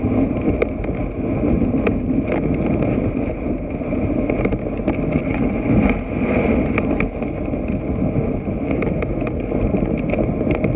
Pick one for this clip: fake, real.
real